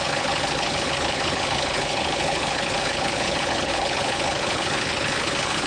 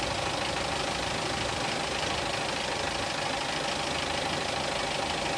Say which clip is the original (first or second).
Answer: second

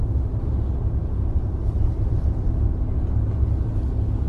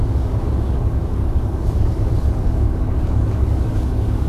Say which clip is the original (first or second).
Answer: first